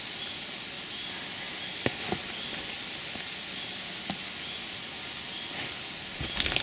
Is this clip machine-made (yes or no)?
no